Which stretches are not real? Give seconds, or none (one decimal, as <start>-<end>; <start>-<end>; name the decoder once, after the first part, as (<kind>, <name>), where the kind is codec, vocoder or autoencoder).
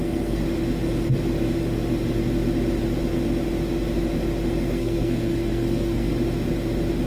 0.0-0.4 (codec, SNAC); 4.5-6.1